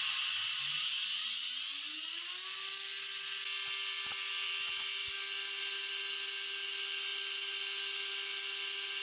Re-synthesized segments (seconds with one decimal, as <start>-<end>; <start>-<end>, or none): none